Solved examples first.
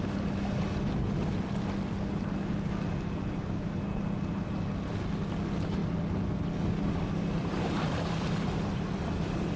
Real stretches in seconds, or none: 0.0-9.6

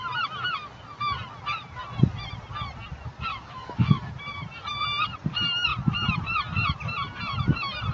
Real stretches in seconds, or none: 0.0-3.3; 4.1-7.9